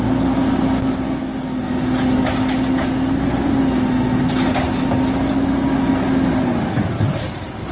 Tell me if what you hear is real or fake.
real